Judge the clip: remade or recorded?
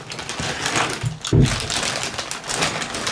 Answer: recorded